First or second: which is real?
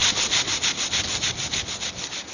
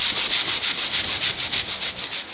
second